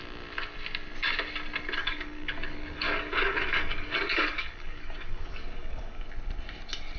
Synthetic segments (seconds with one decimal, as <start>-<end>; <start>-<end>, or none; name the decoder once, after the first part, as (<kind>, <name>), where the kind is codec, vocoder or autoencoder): 1.8-6.0 (codec, DAC)